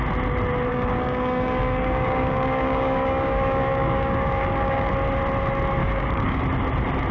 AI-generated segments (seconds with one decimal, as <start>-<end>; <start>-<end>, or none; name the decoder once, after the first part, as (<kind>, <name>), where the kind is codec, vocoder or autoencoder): 0.7-4.9 (codec, DAC); 5.8-6.4